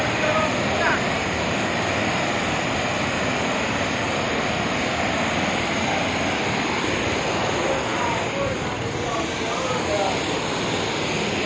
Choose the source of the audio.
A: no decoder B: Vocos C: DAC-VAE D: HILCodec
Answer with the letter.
A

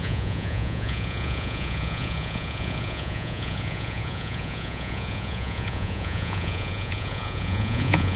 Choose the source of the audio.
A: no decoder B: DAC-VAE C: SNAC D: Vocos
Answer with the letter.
D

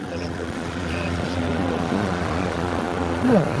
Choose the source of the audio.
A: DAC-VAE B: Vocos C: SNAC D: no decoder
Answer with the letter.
B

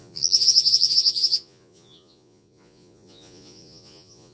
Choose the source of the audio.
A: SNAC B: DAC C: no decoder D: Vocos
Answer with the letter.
D